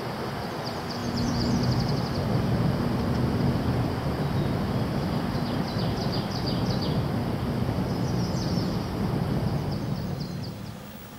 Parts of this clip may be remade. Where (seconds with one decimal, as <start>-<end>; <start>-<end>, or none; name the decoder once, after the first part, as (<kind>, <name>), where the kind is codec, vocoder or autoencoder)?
none